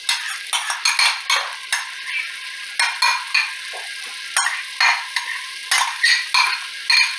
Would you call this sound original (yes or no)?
yes